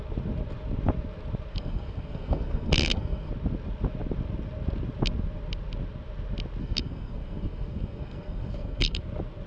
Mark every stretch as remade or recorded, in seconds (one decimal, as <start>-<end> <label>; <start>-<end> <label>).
0.0-1.5 recorded; 1.5-3.3 remade; 3.3-6.6 recorded; 6.6-9.0 remade; 9.0-9.5 recorded

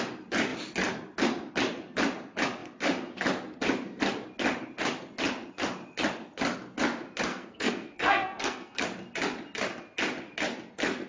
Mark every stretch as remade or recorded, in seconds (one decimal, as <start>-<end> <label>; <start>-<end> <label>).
0.0-7.3 recorded; 7.3-8.8 remade; 8.8-11.1 recorded

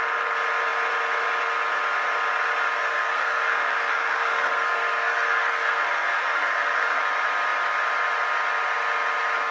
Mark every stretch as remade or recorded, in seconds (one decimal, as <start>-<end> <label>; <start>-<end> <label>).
0.0-2.8 recorded; 2.8-7.0 remade; 7.0-9.5 recorded

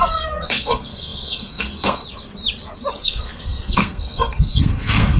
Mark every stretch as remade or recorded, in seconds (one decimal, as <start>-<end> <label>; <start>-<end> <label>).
0.0-2.0 remade; 2.0-2.9 recorded; 2.9-5.2 remade

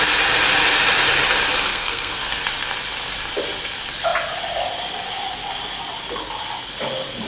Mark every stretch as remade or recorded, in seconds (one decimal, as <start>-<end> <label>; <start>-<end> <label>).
0.0-1.7 recorded; 1.7-2.4 remade; 2.4-7.3 recorded

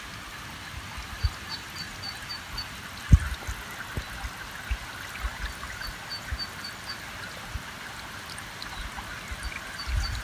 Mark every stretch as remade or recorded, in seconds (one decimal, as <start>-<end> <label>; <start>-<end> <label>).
0.0-10.2 recorded

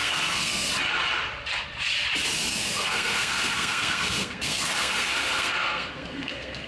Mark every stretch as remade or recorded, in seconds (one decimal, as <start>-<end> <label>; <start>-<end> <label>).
0.0-0.7 remade; 0.7-2.5 recorded; 2.5-6.7 remade